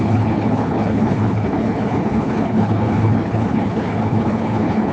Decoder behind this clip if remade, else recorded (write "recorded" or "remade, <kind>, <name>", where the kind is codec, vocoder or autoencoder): remade, codec, HILCodec